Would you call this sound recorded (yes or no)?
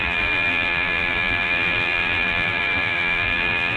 no